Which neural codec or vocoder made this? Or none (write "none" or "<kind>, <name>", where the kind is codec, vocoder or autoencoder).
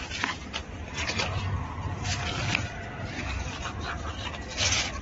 none